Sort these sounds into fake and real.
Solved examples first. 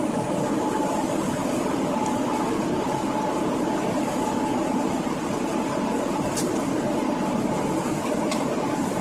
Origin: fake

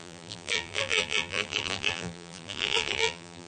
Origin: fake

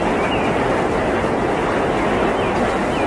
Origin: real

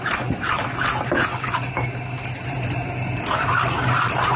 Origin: real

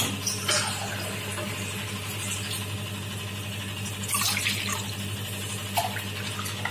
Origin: real